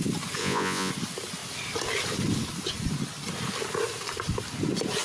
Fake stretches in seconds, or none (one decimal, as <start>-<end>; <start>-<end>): 0.4-0.9